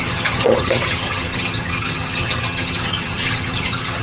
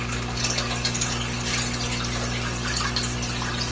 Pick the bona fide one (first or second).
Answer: second